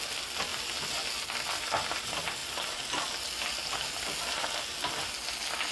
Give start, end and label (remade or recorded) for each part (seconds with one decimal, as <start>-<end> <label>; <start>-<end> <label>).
0.0-5.7 recorded